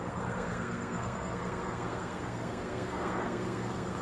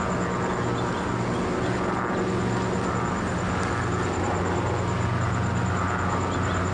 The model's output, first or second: first